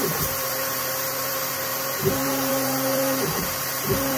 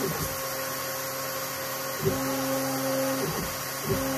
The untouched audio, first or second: second